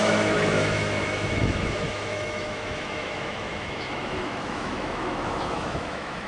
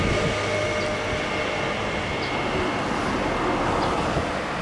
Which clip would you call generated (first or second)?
first